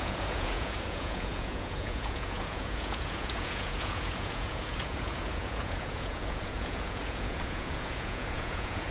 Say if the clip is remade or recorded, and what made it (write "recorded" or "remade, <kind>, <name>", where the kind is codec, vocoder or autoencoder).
remade, vocoder, Vocos